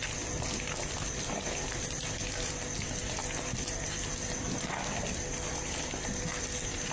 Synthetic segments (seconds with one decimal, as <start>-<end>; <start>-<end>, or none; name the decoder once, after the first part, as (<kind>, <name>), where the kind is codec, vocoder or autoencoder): none